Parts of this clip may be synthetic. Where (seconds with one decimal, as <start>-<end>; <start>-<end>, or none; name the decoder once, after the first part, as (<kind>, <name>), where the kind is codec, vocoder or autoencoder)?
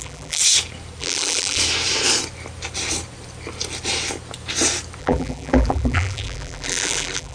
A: 0.0-0.4 (vocoder, BigVGAN v2); 1.0-1.6; 5.0-7.3